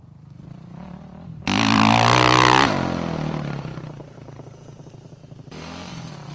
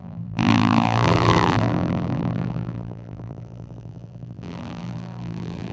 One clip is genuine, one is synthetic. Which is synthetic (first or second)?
second